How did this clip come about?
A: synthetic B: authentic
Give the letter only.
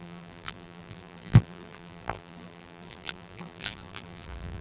A